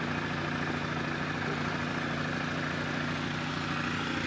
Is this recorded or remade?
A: recorded